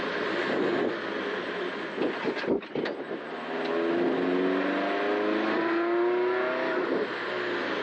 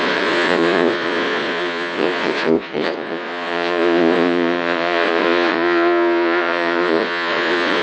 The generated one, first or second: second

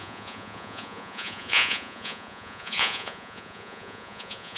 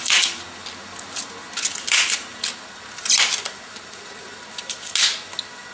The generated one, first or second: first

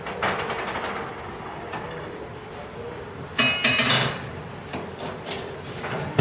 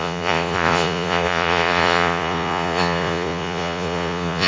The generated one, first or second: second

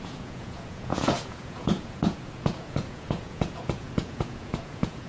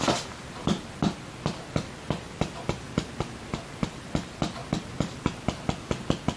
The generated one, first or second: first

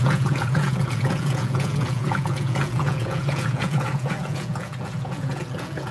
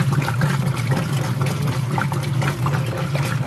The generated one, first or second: first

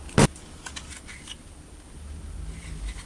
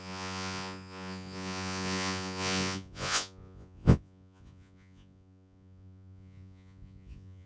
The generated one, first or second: second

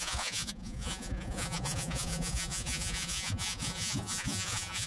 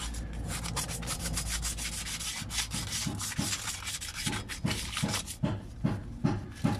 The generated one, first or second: first